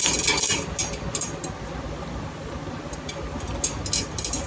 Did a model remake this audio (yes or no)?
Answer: no